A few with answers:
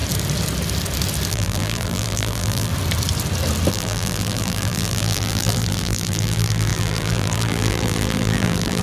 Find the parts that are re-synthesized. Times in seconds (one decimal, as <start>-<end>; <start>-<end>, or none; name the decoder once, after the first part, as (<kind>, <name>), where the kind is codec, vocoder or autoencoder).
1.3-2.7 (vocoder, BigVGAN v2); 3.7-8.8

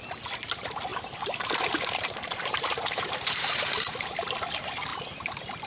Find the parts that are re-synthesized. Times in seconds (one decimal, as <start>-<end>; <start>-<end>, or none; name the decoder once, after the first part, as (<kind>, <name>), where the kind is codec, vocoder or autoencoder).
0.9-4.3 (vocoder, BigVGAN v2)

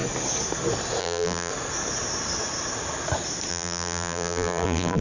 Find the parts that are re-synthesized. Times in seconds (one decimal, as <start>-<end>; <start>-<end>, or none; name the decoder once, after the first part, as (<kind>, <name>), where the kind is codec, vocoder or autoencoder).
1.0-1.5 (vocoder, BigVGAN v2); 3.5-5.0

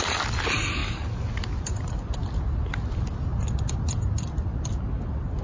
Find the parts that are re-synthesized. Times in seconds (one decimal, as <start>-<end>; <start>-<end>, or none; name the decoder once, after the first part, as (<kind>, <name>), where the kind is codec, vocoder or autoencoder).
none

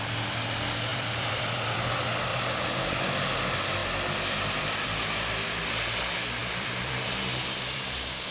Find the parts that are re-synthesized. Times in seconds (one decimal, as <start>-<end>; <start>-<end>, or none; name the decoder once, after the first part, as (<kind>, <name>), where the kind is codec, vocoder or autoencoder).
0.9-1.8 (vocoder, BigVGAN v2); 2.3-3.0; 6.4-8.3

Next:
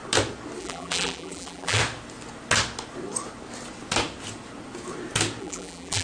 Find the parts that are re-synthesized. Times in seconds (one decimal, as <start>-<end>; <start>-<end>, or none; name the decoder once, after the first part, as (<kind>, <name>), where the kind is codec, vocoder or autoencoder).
0.6-1.8 (vocoder, BigVGAN v2); 5.4-6.0

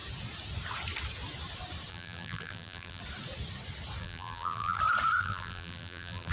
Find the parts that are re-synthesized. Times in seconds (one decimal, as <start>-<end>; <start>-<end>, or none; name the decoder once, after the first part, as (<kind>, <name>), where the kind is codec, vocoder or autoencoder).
1.9-3.0 (vocoder, BigVGAN v2); 4.0-4.8; 5.2-6.3

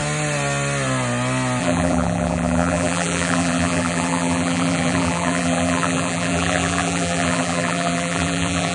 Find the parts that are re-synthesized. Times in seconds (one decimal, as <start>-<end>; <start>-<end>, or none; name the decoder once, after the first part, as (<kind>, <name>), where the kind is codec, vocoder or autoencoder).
1.6-8.7 (vocoder, BigVGAN v2)